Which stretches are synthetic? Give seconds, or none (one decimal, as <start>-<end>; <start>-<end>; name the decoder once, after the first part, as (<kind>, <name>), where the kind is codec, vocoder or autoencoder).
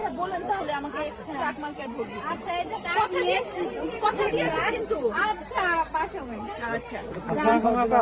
1.7-5.2 (vocoder, BigVGAN v2)